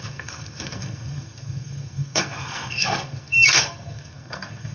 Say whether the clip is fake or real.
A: fake